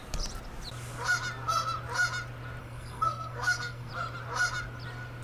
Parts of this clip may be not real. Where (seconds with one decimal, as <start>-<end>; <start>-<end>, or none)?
2.6-3.9